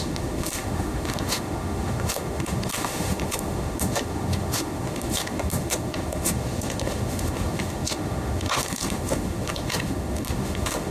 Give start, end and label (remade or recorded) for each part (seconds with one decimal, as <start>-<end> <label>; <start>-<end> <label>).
0.0-10.9 remade